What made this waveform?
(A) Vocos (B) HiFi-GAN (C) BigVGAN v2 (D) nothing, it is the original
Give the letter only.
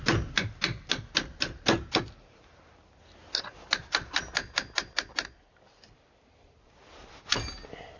D